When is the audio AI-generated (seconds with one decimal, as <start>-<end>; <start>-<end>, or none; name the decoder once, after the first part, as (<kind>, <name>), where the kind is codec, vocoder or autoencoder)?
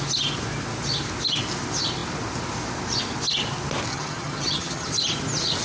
3.9-4.9 (vocoder, HiFi-GAN)